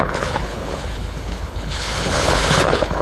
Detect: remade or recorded remade